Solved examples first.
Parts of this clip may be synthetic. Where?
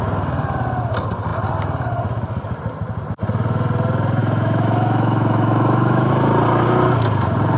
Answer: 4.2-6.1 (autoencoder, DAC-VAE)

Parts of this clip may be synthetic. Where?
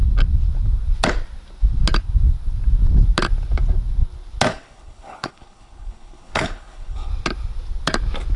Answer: 4.5-7.1 (codec, HILCodec)